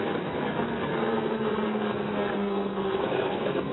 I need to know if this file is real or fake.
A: fake